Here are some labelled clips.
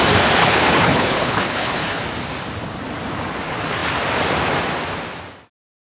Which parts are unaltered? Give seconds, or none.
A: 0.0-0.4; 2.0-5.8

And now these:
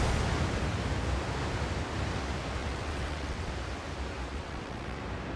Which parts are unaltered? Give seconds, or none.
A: 0.0-2.6; 3.5-4.3; 5.0-5.4

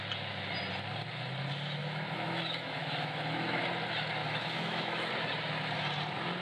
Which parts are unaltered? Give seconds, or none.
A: 0.0-1.8; 3.6-4.2; 5.1-6.4

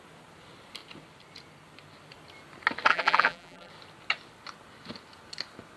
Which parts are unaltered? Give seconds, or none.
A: 0.0-2.9; 3.7-5.8

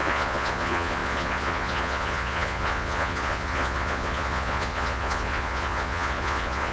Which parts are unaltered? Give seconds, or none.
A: none

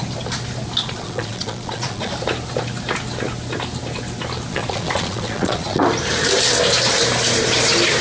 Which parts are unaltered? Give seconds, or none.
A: 0.0-0.8; 2.1-4.5; 5.8-8.0

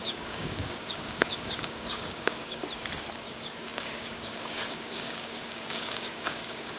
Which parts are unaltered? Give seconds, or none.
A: 2.6-3.1

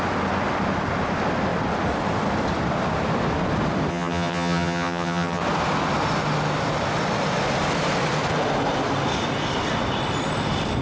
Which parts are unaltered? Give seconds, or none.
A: 0.0-3.9; 5.4-10.8